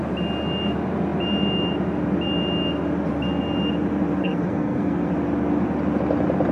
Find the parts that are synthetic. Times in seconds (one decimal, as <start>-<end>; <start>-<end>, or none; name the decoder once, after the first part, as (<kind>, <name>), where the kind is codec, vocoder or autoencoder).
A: 4.2-5.1 (codec, SNAC)